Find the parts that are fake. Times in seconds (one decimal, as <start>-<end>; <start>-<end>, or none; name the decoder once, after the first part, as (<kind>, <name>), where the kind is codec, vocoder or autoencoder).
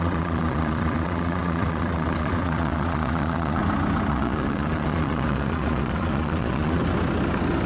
0.0-3.6 (vocoder, Vocos); 4.1-6.8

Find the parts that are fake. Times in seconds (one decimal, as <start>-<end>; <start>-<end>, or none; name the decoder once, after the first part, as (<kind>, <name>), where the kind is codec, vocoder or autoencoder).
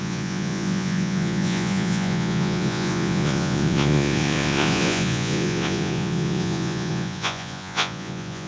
0.0-8.5 (vocoder, Vocos)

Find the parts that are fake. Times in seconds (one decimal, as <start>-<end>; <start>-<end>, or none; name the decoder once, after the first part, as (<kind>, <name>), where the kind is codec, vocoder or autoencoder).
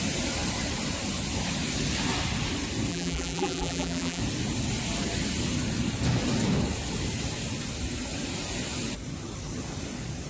2.9-4.2 (vocoder, BigVGAN v2)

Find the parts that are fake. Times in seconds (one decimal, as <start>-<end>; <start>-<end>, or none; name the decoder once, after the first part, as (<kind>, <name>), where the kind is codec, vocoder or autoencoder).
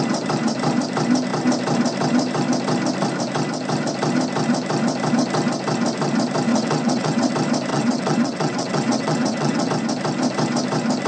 6.5-7.3 (vocoder, WaveNeXt); 7.7-9.7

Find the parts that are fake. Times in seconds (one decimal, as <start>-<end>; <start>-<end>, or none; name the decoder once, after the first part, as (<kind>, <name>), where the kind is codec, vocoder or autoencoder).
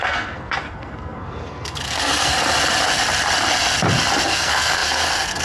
0.0-2.3 (codec, SNAC); 4.2-5.4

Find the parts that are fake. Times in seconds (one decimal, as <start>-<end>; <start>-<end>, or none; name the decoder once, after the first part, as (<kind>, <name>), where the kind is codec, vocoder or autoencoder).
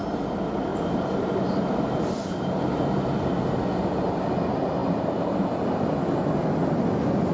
0.7-4.2 (vocoder, BigVGAN v2)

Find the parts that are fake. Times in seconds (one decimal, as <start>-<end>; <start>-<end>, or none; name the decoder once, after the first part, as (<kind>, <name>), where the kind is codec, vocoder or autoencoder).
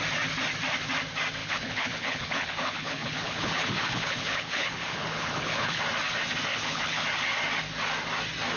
1.4-5.8 (codec, HILCodec); 6.5-7.0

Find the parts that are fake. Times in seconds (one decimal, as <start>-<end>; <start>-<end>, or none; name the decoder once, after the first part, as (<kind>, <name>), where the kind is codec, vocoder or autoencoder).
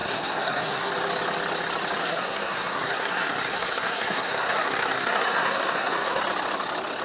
0.0-0.9 (codec, SNAC); 2.0-6.2